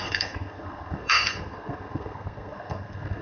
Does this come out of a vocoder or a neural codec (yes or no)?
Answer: yes